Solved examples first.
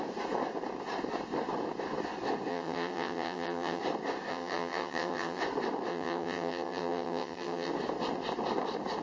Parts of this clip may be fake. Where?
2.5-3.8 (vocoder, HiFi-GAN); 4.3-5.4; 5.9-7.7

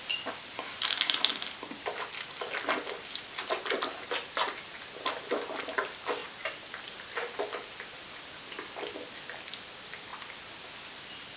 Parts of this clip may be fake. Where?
none

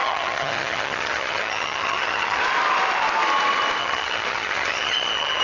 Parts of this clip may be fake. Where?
0.0-2.4 (vocoder, HiFi-GAN); 3.8-5.4

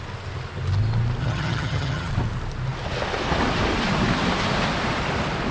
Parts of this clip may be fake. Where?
1.2-2.1 (vocoder, HiFi-GAN)

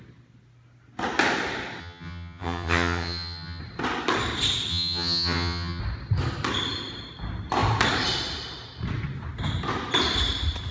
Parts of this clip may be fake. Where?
1.8-3.6 (vocoder, HiFi-GAN); 4.7-5.8